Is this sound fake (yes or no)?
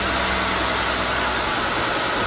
no